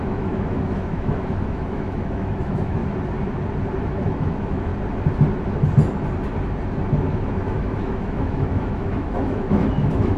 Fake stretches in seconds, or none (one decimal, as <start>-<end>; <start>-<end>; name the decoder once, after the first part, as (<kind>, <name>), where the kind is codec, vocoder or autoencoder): 0.0-2.8 (autoencoder, DAC-VAE); 3.8-4.7; 7.3-10.2